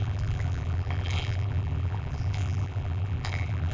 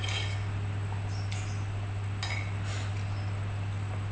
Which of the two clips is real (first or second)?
second